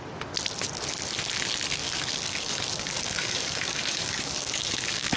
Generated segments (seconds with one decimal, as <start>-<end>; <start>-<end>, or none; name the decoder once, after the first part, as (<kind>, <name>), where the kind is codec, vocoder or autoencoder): 1.8-5.2 (codec, DAC)